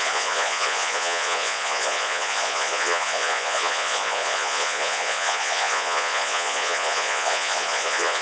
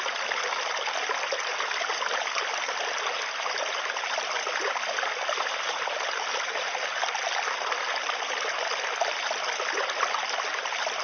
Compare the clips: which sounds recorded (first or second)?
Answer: second